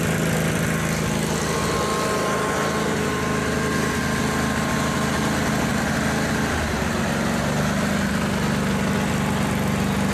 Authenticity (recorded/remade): recorded